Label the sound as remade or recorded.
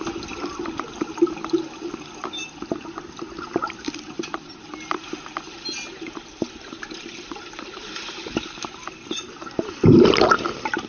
recorded